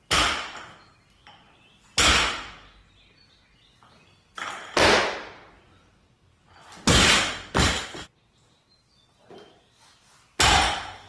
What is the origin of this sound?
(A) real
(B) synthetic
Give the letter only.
A